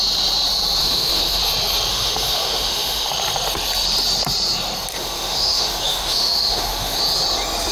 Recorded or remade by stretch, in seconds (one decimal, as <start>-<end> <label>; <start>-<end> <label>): 0.0-0.8 recorded; 0.8-1.4 remade; 1.4-1.9 recorded; 1.9-3.1 remade; 3.1-4.9 recorded; 4.9-7.0 remade; 7.0-7.7 recorded